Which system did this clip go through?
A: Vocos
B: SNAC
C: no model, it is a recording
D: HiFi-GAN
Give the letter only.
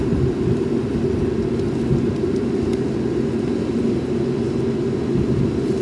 C